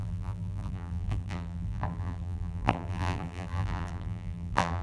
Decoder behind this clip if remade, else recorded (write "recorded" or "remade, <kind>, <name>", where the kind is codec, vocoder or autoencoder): remade, vocoder, BigVGAN v2